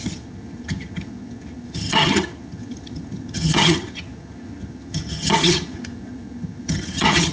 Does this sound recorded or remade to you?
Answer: remade